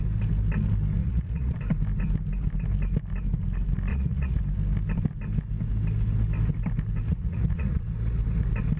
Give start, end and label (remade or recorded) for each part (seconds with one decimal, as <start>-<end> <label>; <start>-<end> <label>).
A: 0.0-1.0 recorded; 1.0-1.6 remade; 1.6-3.9 recorded; 3.9-4.4 remade; 4.4-7.1 recorded; 7.1-7.9 remade; 7.9-8.8 recorded